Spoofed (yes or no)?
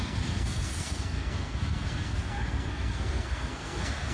yes